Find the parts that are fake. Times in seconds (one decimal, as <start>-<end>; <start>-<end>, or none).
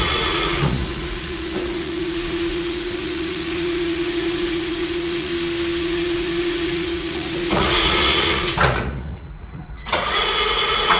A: 0.0-5.3; 5.8-11.0